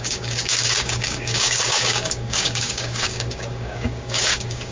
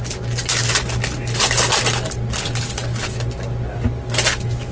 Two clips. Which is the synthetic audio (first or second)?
first